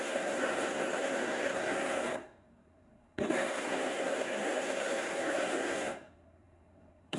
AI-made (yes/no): yes